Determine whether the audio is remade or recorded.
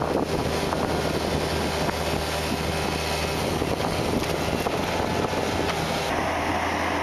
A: recorded